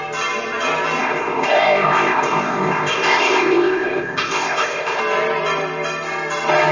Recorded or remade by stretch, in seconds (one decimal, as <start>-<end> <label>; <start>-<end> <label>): 0.0-1.0 recorded; 1.0-5.0 remade; 5.0-6.7 recorded